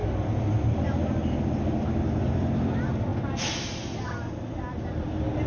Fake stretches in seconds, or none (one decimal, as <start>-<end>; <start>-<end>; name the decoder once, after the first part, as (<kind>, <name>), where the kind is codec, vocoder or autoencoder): none